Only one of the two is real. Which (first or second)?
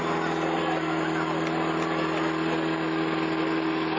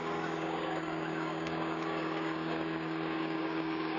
first